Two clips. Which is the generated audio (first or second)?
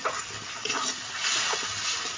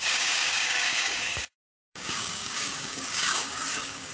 second